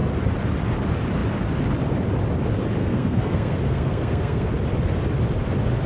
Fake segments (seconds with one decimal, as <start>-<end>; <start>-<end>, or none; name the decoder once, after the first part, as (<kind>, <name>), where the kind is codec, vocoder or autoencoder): 2.8-4.5 (codec, SNAC)